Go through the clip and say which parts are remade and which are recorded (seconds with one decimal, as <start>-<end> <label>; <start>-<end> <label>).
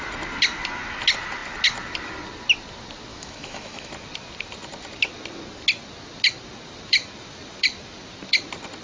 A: 0.0-3.1 recorded; 3.1-3.9 remade; 3.9-8.8 recorded